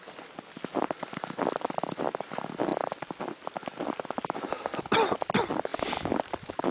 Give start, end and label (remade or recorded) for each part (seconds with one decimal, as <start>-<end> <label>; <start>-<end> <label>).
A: 0.0-6.7 recorded